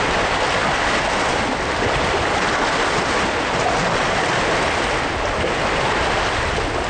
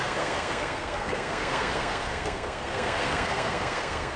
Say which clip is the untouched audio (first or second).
first